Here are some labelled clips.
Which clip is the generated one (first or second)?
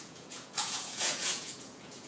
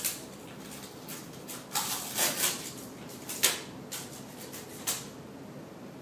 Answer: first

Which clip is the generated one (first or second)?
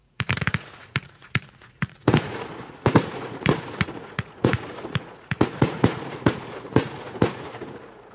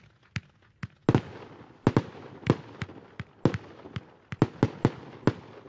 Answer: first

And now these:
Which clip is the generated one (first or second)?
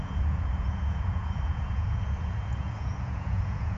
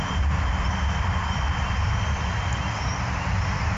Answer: first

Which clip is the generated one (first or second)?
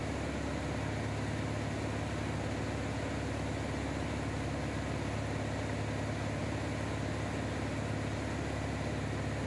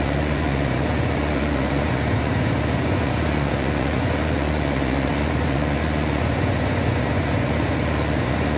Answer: second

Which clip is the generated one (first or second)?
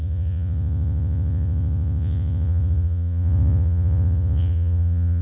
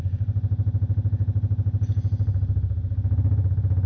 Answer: first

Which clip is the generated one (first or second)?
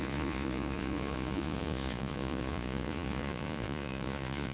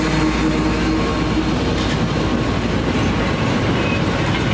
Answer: first